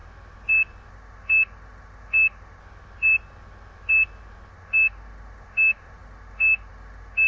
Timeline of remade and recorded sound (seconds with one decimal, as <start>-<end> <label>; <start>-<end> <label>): 0.0-0.9 recorded; 0.9-2.6 remade; 2.6-4.5 recorded; 4.5-7.3 remade